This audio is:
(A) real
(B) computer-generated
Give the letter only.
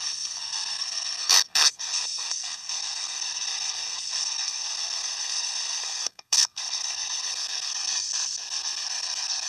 B